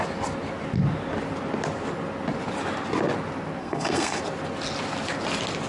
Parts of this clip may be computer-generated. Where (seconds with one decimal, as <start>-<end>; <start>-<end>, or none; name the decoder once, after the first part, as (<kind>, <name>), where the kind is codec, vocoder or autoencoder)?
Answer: 3.6-4.2 (codec, SNAC)